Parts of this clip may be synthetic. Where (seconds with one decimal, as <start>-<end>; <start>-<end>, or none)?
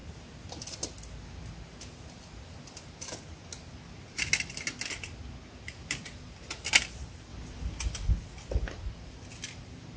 none